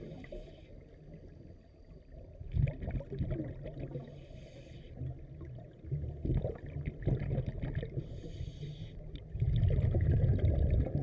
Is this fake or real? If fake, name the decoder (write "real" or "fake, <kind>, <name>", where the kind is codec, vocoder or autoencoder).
real